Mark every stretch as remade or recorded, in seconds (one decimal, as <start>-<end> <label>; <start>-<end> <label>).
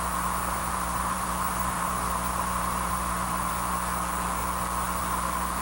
0.0-0.6 recorded; 0.6-3.5 remade; 3.5-5.6 recorded